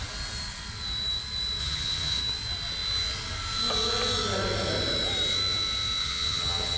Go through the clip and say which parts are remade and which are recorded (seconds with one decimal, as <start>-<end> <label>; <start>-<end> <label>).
0.0-1.6 recorded; 1.6-2.2 remade; 2.2-6.0 recorded; 6.0-6.8 remade